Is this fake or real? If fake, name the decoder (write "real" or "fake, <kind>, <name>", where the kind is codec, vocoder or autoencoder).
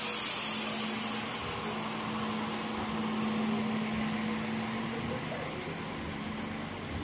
real